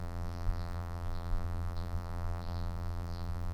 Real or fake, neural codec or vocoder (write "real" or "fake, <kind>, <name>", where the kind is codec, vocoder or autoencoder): fake, vocoder, BigVGAN v2